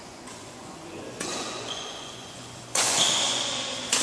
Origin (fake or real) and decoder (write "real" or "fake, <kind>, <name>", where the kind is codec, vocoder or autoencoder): fake, vocoder, Vocos